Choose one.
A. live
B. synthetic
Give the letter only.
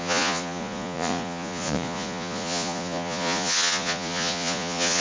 B